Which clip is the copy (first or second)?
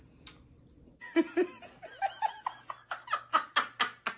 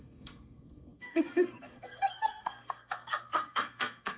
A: second